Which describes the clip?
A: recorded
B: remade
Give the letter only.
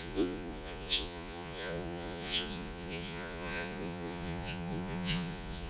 B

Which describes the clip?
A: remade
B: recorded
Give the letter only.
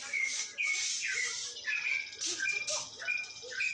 A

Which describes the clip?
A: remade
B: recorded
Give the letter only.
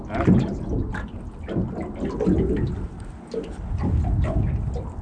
B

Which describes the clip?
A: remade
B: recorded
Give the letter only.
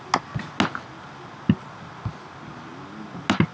B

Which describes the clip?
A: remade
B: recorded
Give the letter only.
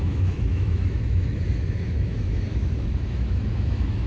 A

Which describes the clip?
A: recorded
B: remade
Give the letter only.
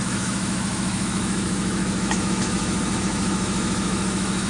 B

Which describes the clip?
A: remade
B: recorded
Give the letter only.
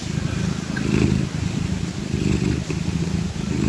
B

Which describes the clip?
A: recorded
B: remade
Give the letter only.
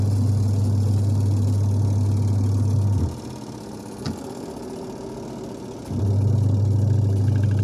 A